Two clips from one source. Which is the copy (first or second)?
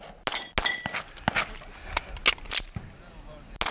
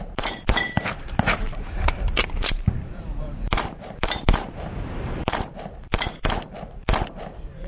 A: second